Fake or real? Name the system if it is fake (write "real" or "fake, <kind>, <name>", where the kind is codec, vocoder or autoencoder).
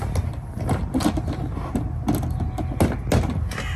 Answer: real